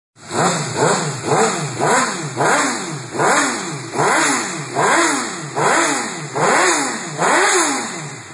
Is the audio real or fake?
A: real